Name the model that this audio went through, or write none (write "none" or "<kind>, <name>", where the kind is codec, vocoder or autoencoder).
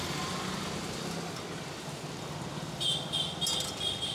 none